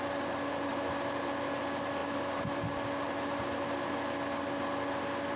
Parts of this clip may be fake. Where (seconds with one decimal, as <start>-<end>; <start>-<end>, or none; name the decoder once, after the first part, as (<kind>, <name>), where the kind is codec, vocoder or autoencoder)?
none